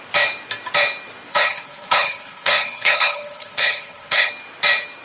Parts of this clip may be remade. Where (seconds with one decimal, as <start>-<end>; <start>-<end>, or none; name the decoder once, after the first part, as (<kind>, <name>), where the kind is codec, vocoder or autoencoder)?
1.3-4.3 (codec, HILCodec)